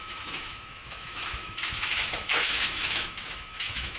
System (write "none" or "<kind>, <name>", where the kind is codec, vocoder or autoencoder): autoencoder, DAC-VAE